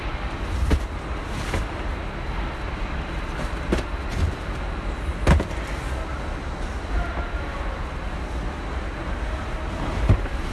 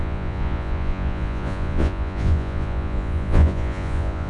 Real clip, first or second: first